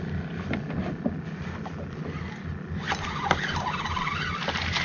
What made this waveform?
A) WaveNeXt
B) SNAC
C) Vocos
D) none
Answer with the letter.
D